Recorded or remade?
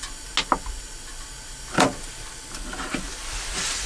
recorded